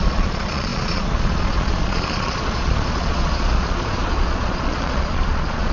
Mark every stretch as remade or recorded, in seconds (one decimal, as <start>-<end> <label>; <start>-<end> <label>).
0.0-5.7 remade